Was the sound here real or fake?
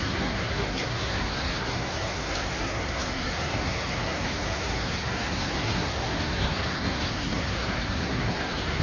fake